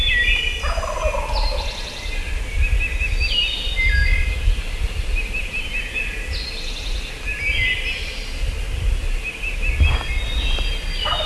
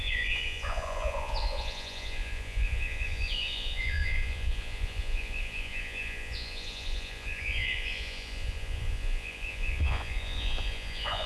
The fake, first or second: second